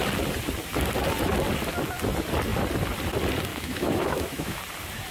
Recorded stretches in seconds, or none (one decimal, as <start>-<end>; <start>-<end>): 0.0-3.5; 4.6-5.1